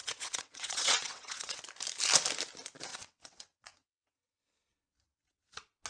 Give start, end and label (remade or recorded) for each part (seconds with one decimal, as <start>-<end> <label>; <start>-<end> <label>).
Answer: 0.0-1.6 remade; 1.6-2.9 recorded; 2.9-4.4 remade; 4.4-5.9 recorded